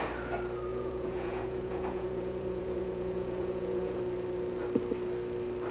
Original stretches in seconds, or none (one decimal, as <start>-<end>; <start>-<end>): 0.0-0.7; 4.0-5.7